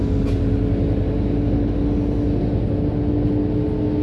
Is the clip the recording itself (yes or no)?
yes